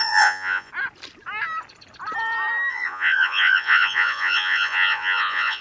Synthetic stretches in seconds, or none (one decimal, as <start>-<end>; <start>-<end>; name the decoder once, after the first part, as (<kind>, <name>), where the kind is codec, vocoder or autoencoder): 0.0-0.7 (vocoder, Vocos); 2.7-5.6